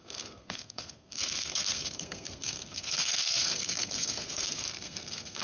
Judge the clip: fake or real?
fake